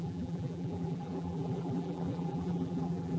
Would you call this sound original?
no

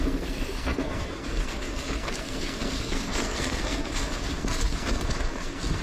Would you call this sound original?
no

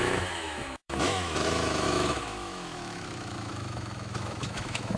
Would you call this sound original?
no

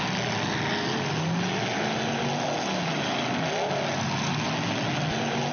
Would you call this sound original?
yes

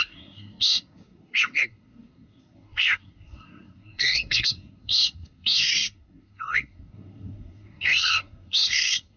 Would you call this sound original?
no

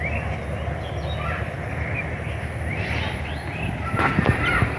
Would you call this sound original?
yes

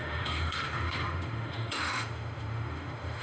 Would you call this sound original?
no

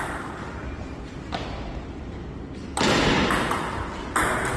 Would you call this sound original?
yes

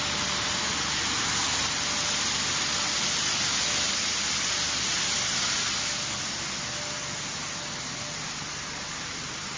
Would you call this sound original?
yes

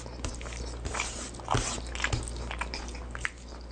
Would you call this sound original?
yes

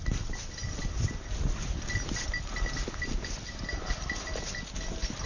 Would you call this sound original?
yes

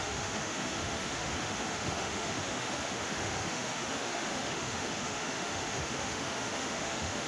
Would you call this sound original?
no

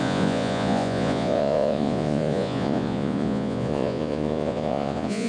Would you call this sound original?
no